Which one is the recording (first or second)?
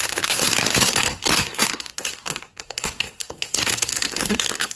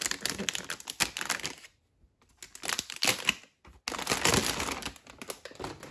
second